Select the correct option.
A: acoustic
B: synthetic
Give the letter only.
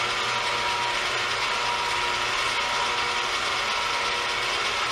A